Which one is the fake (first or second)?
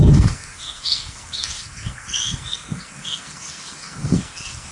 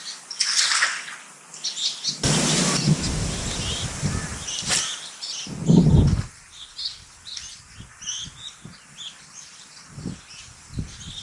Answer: first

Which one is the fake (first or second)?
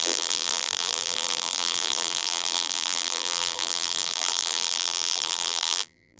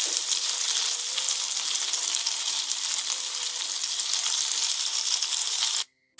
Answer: first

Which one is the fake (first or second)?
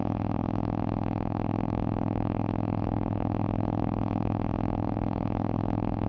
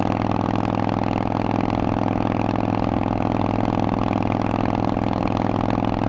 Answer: first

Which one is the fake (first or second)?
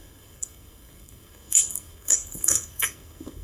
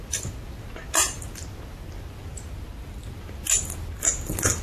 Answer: first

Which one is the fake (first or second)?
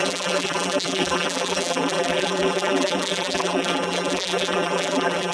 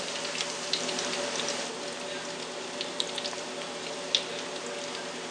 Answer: first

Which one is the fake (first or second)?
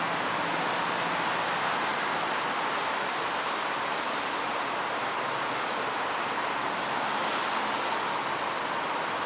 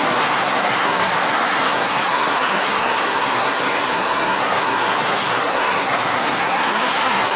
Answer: second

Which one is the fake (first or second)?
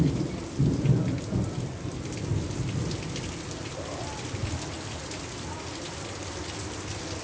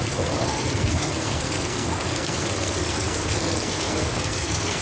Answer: second